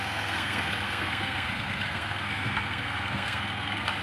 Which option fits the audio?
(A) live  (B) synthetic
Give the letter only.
B